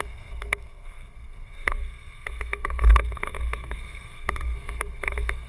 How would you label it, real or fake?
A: fake